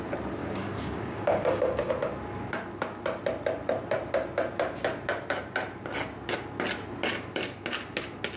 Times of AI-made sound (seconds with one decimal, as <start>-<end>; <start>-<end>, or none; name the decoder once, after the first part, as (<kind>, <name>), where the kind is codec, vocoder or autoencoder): 0.4-1.9 (codec, DAC)